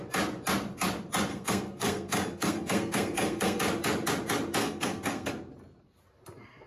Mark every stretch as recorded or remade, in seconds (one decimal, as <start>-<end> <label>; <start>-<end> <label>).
0.0-1.3 recorded; 1.3-3.6 remade; 3.6-4.6 recorded; 4.6-5.3 remade; 5.3-6.7 recorded